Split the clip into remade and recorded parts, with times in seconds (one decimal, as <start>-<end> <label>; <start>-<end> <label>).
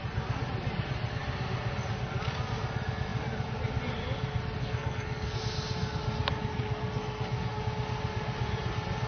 0.0-4.6 recorded; 4.6-5.4 remade; 5.4-6.5 recorded; 6.5-7.6 remade; 7.6-9.1 recorded